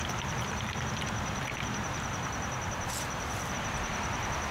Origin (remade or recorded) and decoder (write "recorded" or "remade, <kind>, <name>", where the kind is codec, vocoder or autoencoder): recorded